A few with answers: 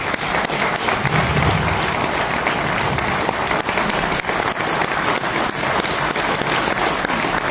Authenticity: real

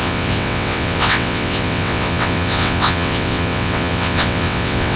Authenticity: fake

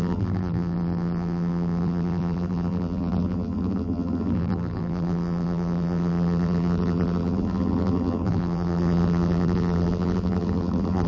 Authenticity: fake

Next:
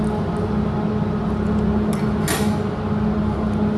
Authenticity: real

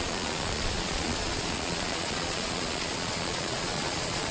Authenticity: fake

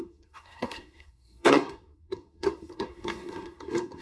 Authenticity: fake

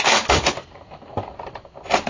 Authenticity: real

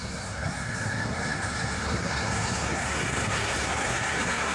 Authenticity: fake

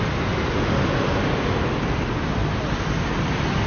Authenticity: real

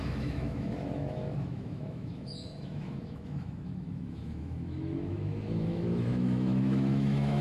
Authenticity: fake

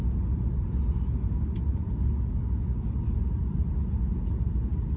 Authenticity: real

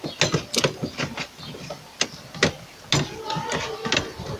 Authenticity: real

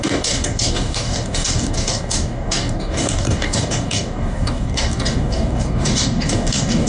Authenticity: fake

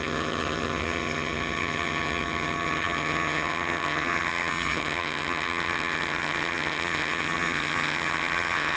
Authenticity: fake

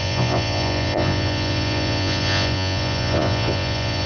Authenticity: fake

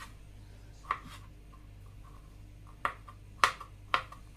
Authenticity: real